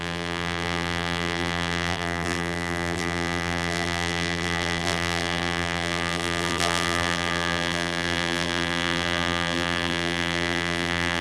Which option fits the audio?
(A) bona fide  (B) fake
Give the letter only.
B